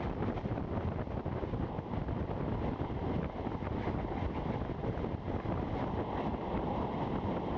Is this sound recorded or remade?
recorded